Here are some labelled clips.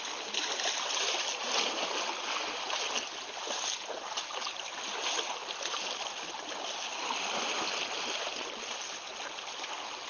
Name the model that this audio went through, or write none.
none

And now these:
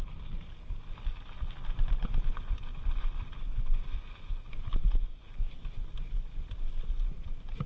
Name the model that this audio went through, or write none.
none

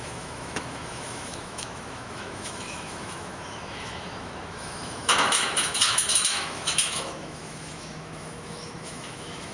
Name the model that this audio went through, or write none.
autoencoder, DAC-VAE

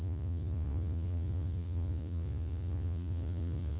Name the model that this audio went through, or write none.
vocoder, Vocos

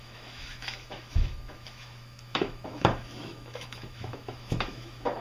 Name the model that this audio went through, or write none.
autoencoder, DAC-VAE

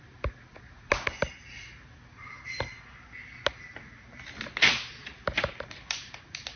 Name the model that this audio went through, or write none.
none